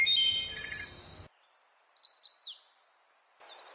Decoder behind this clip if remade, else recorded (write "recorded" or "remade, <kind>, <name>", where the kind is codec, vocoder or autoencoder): recorded